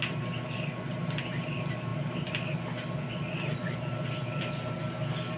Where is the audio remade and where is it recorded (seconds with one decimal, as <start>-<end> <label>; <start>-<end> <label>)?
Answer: 0.0-5.4 recorded